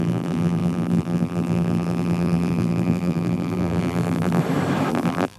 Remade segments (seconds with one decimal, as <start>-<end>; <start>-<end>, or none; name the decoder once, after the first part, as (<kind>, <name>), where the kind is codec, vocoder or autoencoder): 0.0-4.4 (vocoder, BigVGAN v2); 4.9-5.4